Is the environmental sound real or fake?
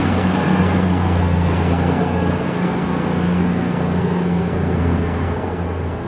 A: fake